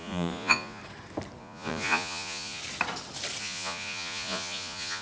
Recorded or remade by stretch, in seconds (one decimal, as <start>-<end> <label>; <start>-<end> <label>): 0.0-0.8 remade; 0.8-1.4 recorded; 1.4-2.6 remade; 2.6-3.4 recorded; 3.4-5.0 remade